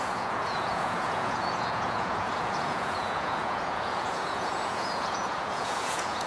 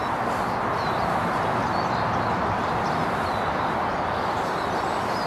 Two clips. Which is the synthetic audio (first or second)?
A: first